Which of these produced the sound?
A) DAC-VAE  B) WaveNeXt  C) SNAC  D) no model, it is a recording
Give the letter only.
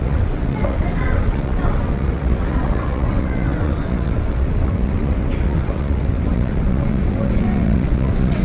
B